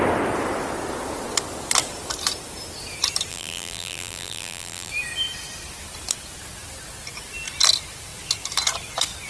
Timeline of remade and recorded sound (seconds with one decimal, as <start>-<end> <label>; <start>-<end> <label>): 0.0-3.3 recorded; 3.3-4.9 remade; 4.9-9.3 recorded